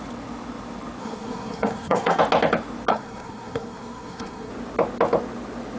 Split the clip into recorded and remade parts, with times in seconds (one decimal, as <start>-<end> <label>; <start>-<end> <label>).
0.0-1.0 recorded; 1.0-2.2 remade; 2.2-2.9 recorded; 2.9-4.5 remade; 4.5-5.8 recorded